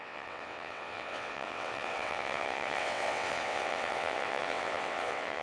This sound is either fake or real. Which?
fake